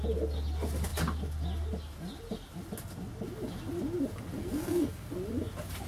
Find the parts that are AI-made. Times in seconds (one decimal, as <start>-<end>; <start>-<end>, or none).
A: 4.4-5.1